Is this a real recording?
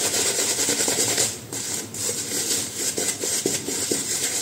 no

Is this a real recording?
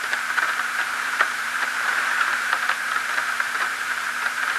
no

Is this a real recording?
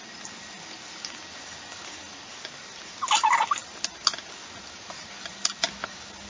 yes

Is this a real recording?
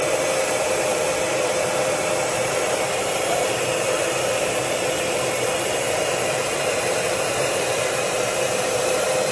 no